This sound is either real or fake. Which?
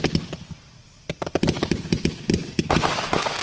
real